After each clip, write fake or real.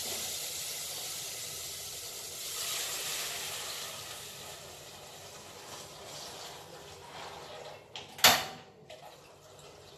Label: real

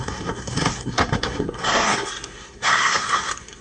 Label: fake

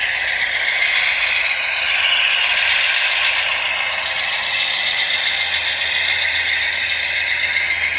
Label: real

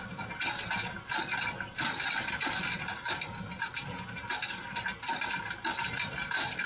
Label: real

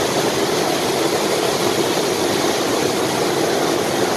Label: real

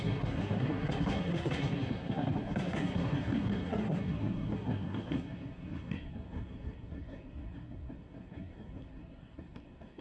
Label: fake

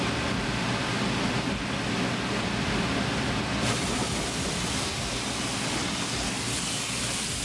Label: real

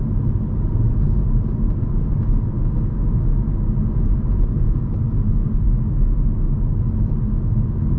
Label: real